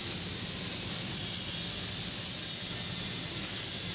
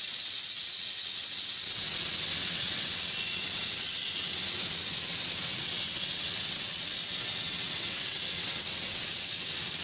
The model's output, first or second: second